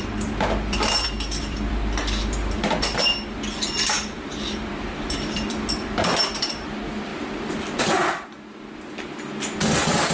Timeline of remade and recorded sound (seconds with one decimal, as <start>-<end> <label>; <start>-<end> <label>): 0.0-10.1 remade